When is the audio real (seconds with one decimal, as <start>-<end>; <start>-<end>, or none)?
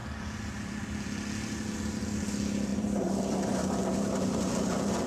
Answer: 0.0-2.7; 4.0-5.1